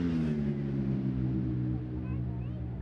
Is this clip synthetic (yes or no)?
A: no